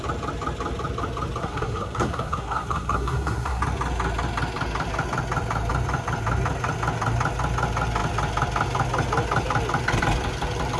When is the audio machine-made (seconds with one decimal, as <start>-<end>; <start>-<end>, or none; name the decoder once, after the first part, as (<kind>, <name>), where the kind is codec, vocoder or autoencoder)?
1.4-3.6 (codec, SNAC)